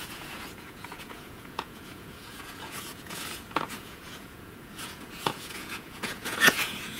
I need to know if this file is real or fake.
fake